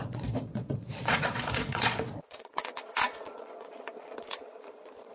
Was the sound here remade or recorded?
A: remade